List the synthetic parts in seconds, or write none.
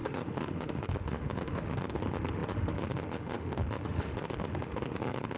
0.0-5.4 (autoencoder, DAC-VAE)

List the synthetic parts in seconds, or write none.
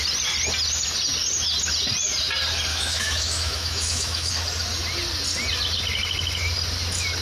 2.7-4.3 (autoencoder, DAC-VAE)